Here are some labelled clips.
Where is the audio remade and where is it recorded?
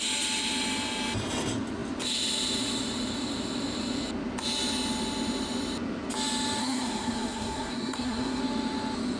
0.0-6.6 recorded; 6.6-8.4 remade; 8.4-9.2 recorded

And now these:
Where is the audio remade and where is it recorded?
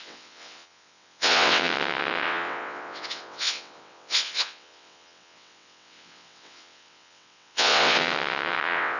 0.0-9.0 remade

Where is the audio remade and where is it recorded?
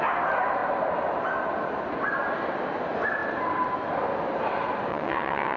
0.0-4.9 recorded; 4.9-5.6 remade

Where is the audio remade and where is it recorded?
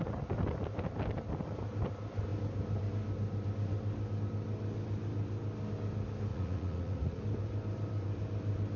0.0-6.3 recorded; 6.3-7.2 remade; 7.2-8.8 recorded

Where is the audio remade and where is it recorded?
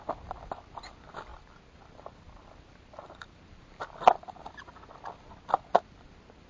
0.0-6.5 recorded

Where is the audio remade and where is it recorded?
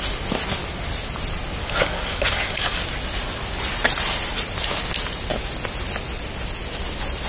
0.0-1.6 recorded; 1.6-2.8 remade; 2.8-7.3 recorded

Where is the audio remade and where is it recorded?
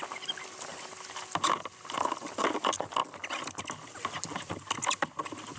0.0-5.6 recorded